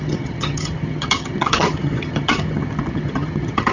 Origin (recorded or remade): remade